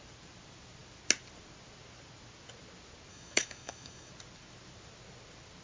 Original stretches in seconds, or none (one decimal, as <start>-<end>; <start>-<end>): 0.0-3.1; 4.1-5.6

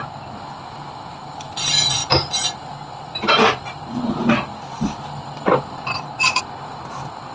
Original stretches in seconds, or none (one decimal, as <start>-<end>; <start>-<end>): 0.0-7.3

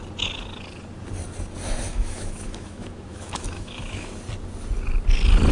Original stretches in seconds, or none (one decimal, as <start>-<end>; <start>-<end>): 0.0-1.9; 4.1-5.5

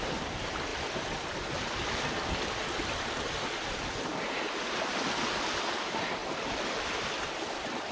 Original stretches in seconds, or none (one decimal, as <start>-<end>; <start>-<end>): 0.7-5.4; 6.2-7.1

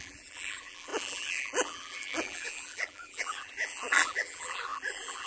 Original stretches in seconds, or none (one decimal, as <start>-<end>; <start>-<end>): none